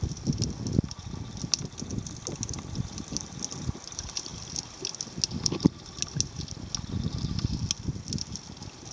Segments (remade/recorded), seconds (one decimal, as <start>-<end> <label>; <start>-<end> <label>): 0.0-8.9 recorded

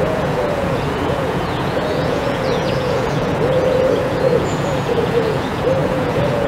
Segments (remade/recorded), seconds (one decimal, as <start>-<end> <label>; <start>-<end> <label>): 0.0-6.5 remade

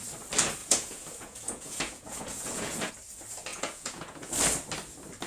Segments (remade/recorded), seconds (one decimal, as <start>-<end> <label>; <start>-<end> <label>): 0.0-0.6 recorded; 0.6-2.9 remade; 2.9-3.5 recorded; 3.5-4.3 remade; 4.3-5.3 recorded

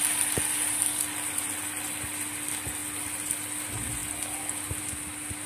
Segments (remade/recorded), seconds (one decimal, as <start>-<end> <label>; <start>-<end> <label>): 0.0-5.5 recorded

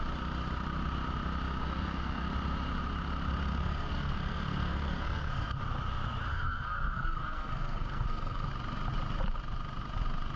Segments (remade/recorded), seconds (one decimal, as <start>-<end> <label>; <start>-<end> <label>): 0.0-1.6 recorded; 1.6-2.3 remade; 2.3-3.5 recorded; 3.5-5.6 remade; 5.6-6.3 recorded; 6.3-8.5 remade; 8.5-10.4 recorded

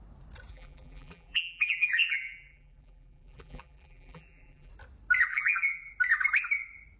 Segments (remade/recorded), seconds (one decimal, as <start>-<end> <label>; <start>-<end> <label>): 0.0-0.5 recorded; 0.5-4.7 remade; 4.7-5.3 recorded; 5.3-5.9 remade; 5.9-7.0 recorded

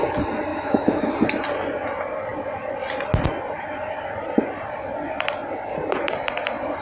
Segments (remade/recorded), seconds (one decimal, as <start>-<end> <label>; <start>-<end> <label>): 0.0-0.5 recorded; 0.5-1.1 remade; 1.1-6.8 recorded